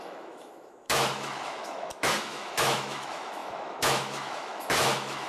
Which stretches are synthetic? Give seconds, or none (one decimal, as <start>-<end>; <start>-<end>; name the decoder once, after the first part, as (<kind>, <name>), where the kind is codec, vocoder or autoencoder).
0.0-5.3 (autoencoder, DAC-VAE)